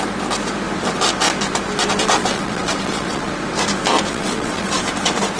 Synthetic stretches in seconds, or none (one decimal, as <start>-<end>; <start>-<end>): 2.0-3.3; 4.1-4.7